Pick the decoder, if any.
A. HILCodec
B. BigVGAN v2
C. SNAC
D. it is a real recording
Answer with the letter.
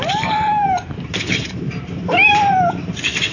B